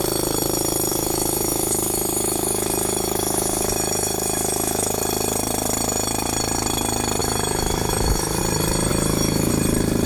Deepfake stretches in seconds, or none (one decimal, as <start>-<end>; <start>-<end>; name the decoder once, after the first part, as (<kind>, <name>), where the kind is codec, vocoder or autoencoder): 0.9-5.0 (autoencoder, DAC-VAE); 7.2-8.4; 8.9-9.5

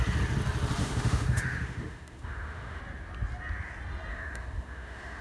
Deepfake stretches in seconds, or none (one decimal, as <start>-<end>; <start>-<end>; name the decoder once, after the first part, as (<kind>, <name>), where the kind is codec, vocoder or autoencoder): 0.8-2.8 (autoencoder, DAC-VAE); 4.1-5.2

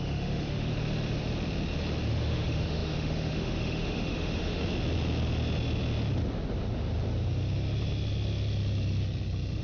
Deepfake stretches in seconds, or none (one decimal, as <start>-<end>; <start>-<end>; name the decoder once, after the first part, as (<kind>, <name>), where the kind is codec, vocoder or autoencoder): 0.0-0.7 (autoencoder, DAC-VAE); 2.1-4.6

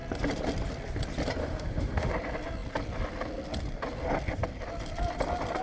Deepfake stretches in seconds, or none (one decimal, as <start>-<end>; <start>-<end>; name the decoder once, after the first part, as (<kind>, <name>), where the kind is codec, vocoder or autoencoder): 1.4-2.1 (autoencoder, DAC-VAE)

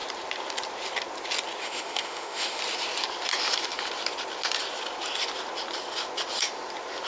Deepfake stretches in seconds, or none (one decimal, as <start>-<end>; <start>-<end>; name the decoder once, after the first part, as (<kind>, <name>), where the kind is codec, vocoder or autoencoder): 1.6-2.6 (autoencoder, DAC-VAE)

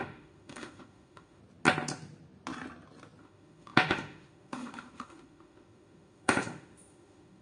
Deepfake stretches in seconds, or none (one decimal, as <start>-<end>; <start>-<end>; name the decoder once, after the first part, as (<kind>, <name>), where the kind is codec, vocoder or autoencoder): 0.0-1.4 (autoencoder, DAC-VAE); 3.2-7.4

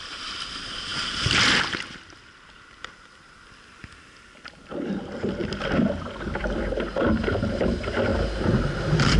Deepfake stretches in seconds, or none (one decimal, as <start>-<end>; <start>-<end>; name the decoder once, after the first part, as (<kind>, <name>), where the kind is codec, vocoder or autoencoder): none